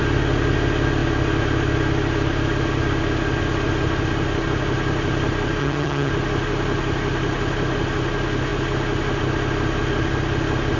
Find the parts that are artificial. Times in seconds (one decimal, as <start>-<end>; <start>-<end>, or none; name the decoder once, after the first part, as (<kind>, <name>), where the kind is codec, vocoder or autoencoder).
5.6-6.1 (vocoder, HiFi-GAN)